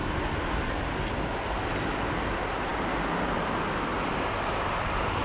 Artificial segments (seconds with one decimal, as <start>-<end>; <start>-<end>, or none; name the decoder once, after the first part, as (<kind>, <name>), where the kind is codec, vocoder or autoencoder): none